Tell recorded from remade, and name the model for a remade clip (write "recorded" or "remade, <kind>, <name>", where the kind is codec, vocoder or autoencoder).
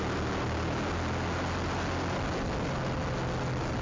recorded